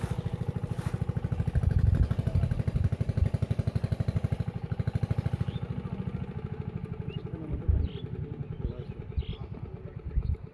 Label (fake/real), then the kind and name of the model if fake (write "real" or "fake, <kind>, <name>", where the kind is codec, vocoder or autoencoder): real